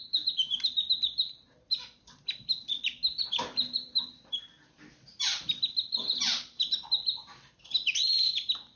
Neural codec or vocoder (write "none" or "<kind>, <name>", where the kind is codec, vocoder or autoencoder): none